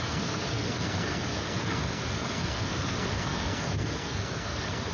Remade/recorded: remade